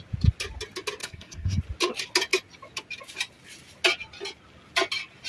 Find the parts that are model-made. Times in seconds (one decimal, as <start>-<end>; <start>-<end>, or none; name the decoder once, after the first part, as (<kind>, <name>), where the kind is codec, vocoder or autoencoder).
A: 1.0-1.6 (codec, SNAC)